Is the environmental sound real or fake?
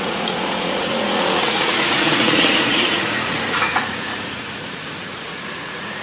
fake